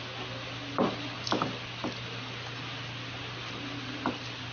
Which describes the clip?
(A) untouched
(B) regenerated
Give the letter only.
A